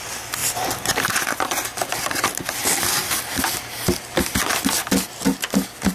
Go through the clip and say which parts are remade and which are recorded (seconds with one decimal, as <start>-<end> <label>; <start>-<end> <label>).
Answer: 0.0-0.4 recorded; 0.4-1.1 remade; 1.1-5.9 recorded